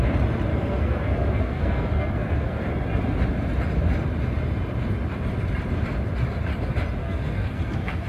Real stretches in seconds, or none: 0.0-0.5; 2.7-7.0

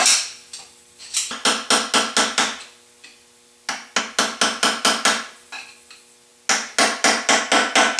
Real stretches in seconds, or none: 0.0-8.0

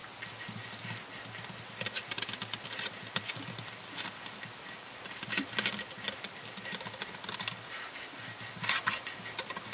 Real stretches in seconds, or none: 0.0-9.7

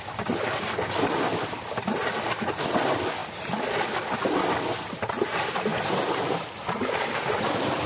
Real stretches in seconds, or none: 0.0-7.9